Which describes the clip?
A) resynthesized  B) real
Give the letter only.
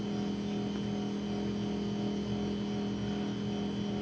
B